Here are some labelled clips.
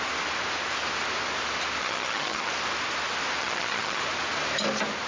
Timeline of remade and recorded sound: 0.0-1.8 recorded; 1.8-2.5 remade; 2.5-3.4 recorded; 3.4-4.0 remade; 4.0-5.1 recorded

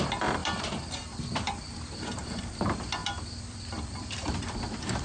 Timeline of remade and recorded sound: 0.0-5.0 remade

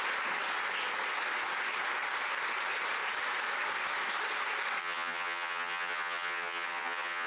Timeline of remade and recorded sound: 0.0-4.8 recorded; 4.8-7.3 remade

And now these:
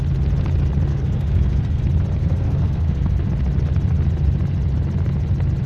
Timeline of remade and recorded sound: 0.0-0.9 recorded; 0.9-1.8 remade; 1.8-2.2 recorded; 2.2-3.3 remade; 3.3-5.7 recorded